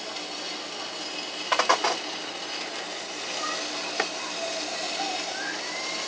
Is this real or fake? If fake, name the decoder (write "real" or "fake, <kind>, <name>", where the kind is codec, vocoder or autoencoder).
real